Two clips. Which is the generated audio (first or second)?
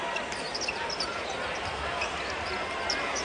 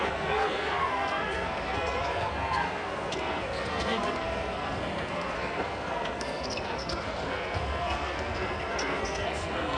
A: second